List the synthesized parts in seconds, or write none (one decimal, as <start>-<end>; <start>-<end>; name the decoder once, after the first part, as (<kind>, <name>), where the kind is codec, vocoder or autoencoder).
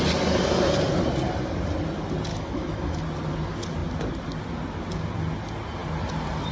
2.3-3.0 (autoencoder, DAC-VAE)